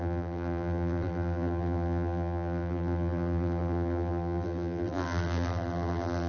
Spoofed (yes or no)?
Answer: yes